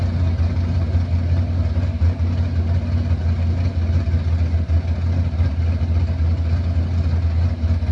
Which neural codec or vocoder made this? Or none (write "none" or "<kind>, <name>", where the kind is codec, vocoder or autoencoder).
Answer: none